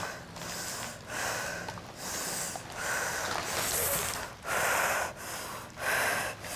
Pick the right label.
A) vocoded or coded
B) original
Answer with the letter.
B